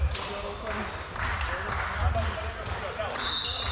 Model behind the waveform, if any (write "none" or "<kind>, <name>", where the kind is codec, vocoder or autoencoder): none